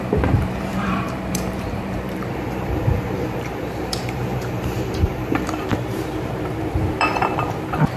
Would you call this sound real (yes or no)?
no